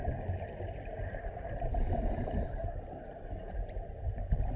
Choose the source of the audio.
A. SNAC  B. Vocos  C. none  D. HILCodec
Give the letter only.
C